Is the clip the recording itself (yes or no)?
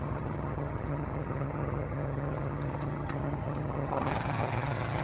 no